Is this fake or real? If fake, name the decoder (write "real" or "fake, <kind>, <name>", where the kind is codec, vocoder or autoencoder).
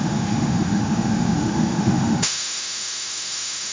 fake, autoencoder, DAC-VAE